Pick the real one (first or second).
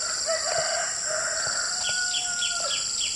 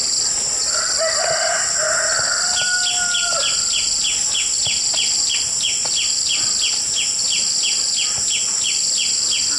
second